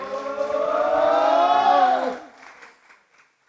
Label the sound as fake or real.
real